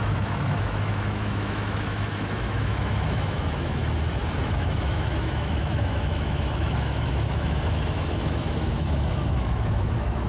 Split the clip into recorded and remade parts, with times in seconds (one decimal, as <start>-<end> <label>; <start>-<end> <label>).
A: 0.0-3.8 remade; 3.8-4.4 recorded; 4.4-10.3 remade